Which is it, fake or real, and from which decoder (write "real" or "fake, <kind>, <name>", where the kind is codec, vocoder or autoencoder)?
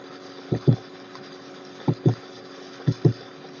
fake, codec, HILCodec